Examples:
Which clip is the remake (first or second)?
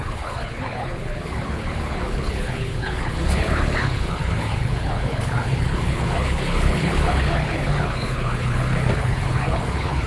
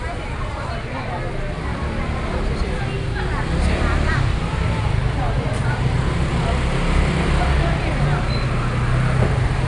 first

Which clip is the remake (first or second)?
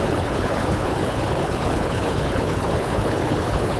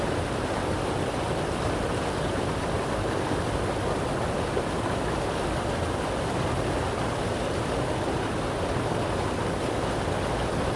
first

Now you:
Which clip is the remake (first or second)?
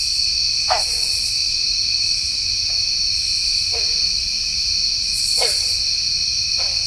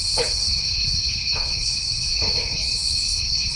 second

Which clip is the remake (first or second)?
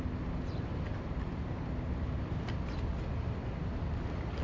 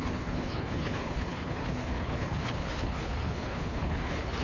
second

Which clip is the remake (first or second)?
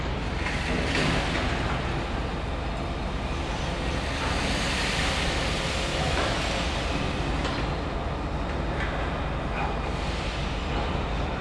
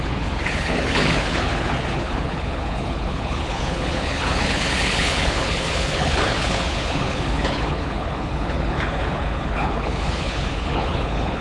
second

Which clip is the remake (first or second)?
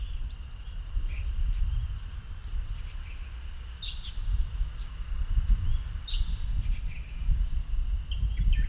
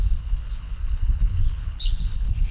second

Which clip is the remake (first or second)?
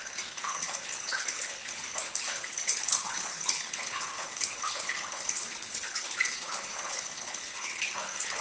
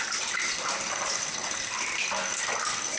first